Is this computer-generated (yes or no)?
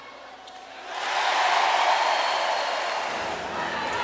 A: no